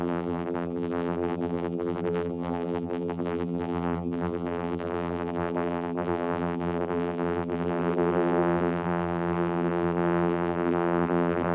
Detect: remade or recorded remade